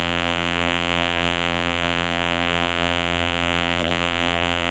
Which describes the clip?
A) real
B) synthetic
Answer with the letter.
B